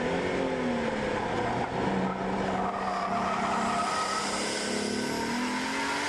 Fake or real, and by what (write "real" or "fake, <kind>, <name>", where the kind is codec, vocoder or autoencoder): real